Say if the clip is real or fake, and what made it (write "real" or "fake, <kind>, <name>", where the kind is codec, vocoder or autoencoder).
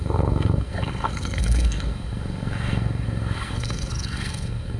fake, codec, SNAC